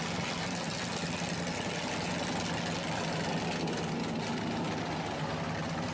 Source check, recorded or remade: recorded